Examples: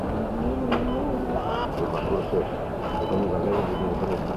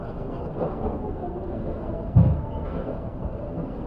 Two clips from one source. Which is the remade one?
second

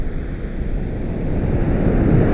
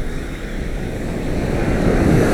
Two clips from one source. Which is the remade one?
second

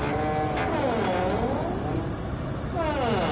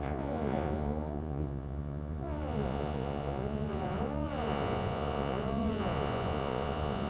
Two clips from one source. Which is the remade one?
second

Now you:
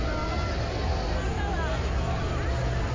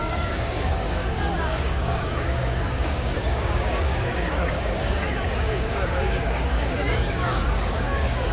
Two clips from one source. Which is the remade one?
second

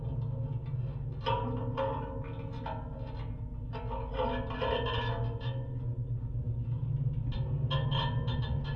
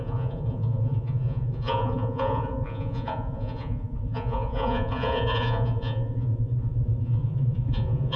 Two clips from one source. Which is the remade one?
second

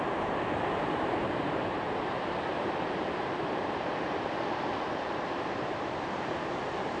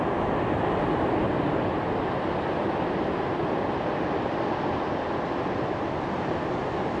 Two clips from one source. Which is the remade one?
first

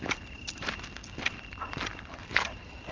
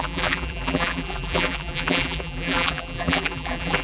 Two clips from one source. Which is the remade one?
second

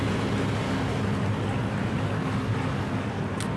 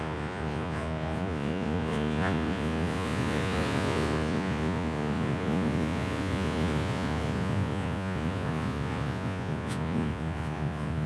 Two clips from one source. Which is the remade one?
second